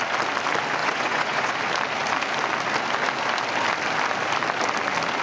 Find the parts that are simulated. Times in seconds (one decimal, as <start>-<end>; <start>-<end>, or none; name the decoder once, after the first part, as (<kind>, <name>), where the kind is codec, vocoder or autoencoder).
0.8-1.5 (vocoder, Vocos)